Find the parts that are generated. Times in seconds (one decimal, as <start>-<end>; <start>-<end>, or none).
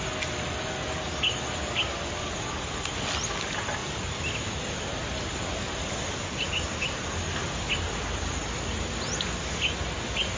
none